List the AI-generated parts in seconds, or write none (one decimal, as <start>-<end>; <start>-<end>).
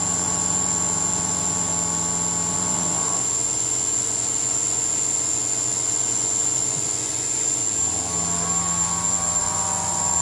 0.0-1.7; 2.5-7.6; 9.4-10.2